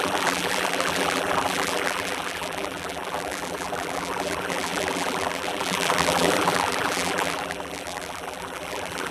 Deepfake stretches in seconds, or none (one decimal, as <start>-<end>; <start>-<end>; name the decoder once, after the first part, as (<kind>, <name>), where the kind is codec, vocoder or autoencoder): 0.0-9.1 (vocoder, BigVGAN v2)